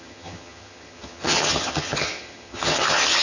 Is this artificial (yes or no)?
yes